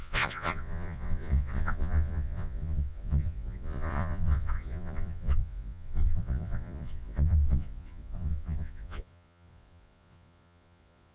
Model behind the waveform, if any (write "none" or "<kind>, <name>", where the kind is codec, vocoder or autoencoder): vocoder, Vocos